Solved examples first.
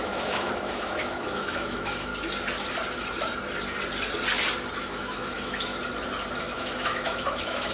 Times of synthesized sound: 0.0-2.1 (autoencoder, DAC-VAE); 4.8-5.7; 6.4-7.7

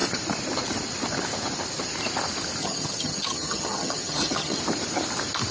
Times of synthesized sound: 2.6-4.6 (vocoder, HiFi-GAN)

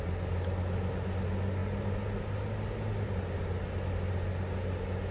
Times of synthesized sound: none

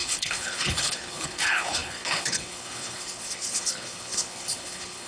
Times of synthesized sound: 0.0-5.1 (codec, HILCodec)

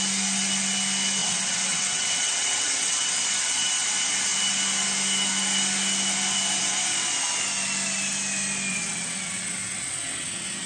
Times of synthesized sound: 1.2-3.1 (vocoder, WaveNeXt); 8.7-10.7

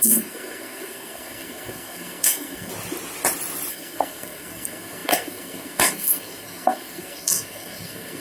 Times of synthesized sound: 0.0-2.7 (codec, SNAC); 3.7-8.2